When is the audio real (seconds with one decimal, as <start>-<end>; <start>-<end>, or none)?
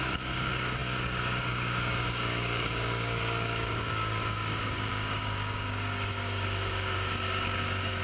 none